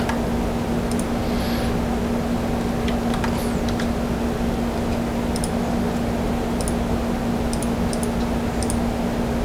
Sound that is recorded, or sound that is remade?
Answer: recorded